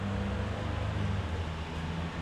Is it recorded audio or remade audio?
recorded